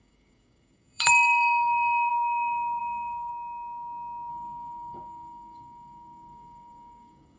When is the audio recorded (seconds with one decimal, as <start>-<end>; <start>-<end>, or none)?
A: 3.3-4.3